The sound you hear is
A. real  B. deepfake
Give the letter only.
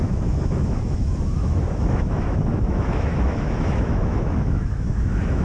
B